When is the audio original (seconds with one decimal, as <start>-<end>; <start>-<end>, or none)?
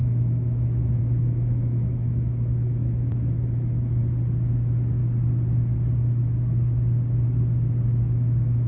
4.0-4.5; 5.0-8.0